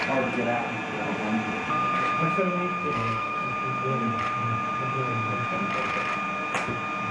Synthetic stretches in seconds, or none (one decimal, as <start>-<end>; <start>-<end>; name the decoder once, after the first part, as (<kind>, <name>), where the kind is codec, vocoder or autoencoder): 2.8-3.5 (codec, SNAC)